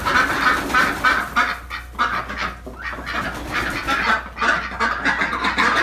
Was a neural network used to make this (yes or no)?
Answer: no